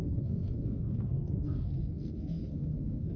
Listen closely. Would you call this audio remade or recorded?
remade